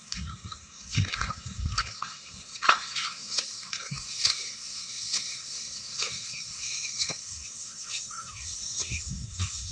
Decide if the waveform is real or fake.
fake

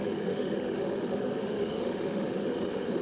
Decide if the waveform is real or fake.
fake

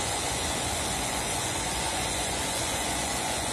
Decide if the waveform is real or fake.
fake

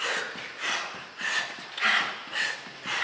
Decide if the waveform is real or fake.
real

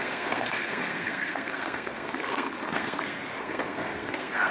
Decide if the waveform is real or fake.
fake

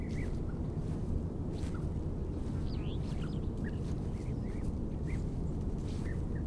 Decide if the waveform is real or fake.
real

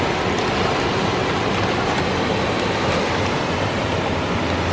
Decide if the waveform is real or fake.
real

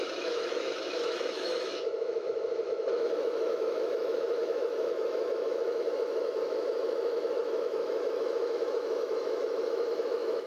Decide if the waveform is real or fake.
fake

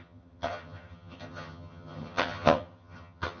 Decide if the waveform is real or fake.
fake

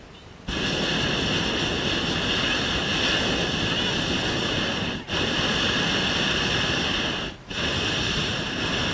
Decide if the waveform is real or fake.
real